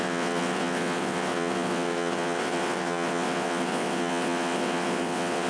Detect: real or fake fake